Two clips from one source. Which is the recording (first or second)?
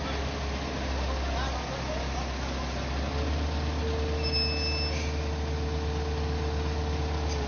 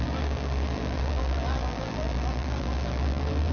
first